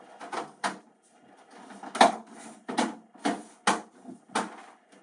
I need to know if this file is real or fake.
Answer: real